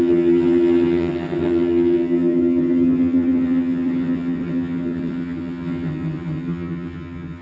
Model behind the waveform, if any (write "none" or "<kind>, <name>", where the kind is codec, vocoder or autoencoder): vocoder, HiFi-GAN